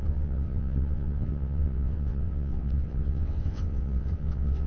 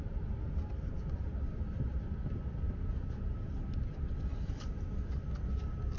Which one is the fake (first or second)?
first